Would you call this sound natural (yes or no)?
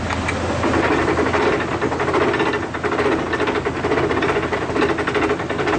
yes